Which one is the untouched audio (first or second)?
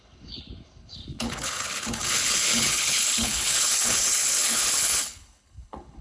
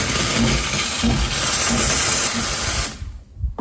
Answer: second